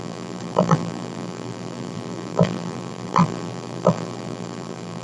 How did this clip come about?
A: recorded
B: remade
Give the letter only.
B